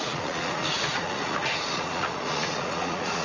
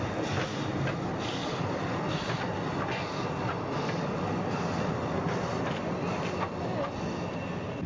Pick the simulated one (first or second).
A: first